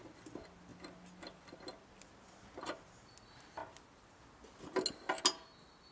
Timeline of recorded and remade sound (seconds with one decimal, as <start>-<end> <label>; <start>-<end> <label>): 0.0-5.9 recorded